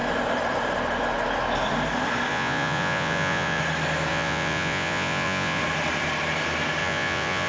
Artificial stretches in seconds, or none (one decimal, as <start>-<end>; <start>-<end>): 2.3-3.6; 4.1-5.6; 6.8-7.5

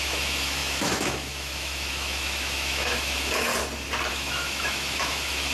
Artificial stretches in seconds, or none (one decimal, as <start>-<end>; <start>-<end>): 0.0-3.5; 4.1-5.5

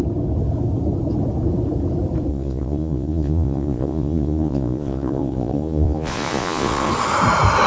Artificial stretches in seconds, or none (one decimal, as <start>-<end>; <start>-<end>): 2.3-6.9

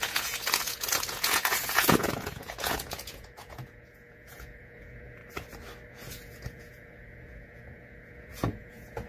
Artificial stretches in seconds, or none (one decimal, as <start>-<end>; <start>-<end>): 0.0-5.2; 5.9-9.1

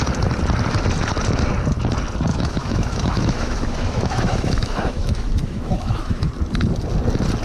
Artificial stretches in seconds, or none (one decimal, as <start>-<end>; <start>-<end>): 2.3-6.3

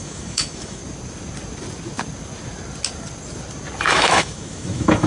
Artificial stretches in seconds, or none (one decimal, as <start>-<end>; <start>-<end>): 0.0-0.8; 3.9-5.1

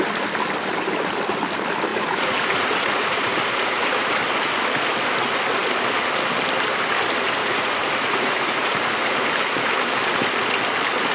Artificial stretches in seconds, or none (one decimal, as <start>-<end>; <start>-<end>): 1.9-4.1; 7.4-9.3

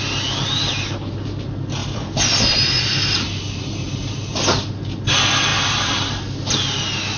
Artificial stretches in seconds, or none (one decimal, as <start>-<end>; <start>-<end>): 1.8-4.7; 5.5-6.2